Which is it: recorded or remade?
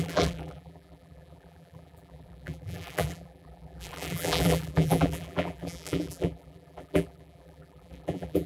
remade